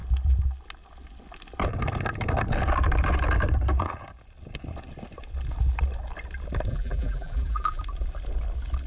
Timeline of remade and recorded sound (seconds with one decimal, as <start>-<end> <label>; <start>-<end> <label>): 0.0-6.7 recorded; 6.7-7.8 remade; 7.8-8.9 recorded